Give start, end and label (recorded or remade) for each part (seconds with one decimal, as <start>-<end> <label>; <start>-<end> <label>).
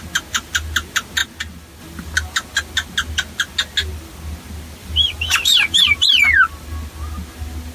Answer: 0.0-4.8 recorded; 4.8-6.1 remade; 6.1-7.7 recorded